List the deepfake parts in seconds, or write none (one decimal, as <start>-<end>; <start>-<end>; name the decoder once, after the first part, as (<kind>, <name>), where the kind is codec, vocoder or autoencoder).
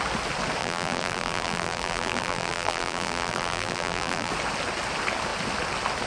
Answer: 0.6-4.3 (vocoder, BigVGAN v2)